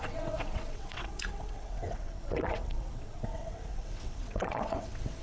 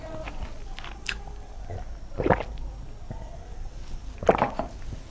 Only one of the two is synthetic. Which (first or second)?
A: first